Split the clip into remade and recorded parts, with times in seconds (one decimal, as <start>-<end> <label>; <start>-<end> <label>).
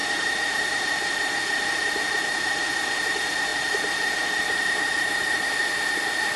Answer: 0.0-6.4 recorded